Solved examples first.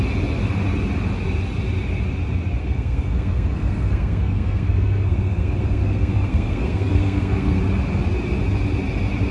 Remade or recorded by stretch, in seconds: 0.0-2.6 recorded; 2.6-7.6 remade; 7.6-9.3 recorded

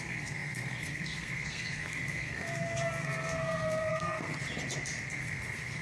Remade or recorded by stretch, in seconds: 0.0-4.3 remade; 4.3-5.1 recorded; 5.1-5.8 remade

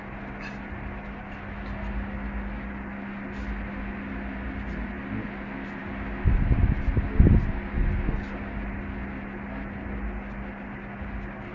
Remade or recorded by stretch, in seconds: 0.0-11.5 recorded

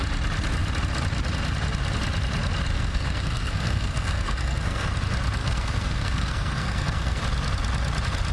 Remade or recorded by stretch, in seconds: 0.0-2.7 recorded; 2.7-4.9 remade; 4.9-5.4 recorded; 5.4-7.2 remade; 7.2-8.3 recorded

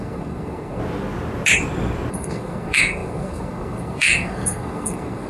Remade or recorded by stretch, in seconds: 0.0-0.8 remade; 0.8-2.1 recorded; 2.1-5.3 remade

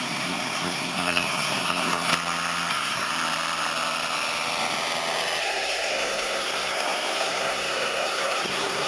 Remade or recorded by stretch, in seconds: 0.0-2.1 remade; 2.1-2.7 recorded; 2.7-3.1 remade; 3.1-5.4 recorded; 5.4-8.9 remade

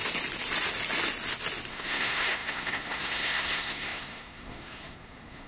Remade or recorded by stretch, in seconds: 0.0-1.7 recorded; 1.7-5.5 remade

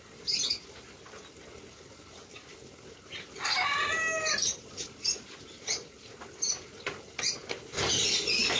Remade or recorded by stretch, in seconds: 0.0-8.6 recorded